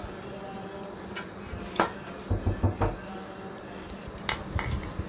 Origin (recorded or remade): recorded